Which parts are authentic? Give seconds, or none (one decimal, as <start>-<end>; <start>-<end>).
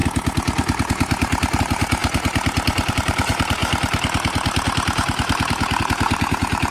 0.0-1.6; 2.0-2.9; 3.6-5.8